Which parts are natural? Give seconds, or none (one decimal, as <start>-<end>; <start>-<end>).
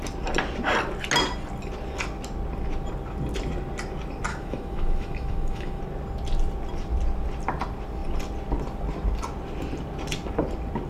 0.0-4.3; 5.8-10.9